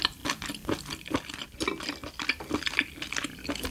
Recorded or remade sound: recorded